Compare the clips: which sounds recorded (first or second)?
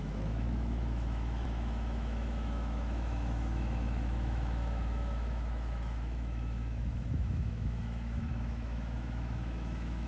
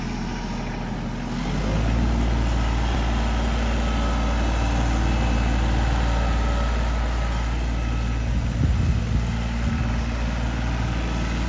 second